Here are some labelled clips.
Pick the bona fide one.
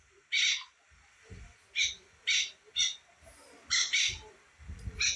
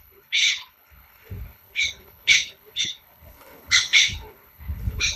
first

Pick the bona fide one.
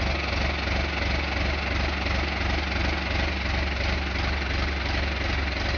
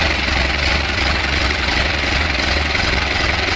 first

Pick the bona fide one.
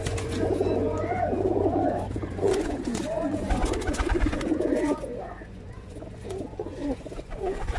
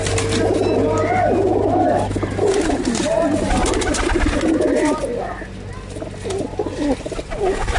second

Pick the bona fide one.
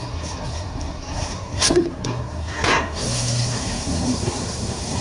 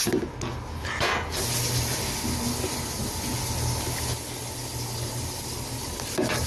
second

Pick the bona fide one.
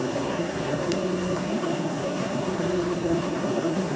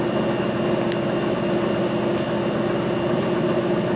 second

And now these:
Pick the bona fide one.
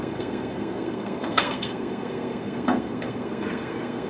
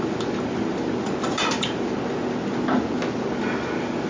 second